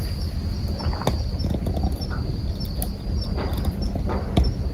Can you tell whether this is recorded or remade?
recorded